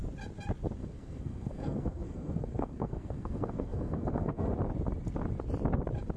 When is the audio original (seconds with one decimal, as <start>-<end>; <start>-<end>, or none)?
0.0-0.8; 4.5-6.2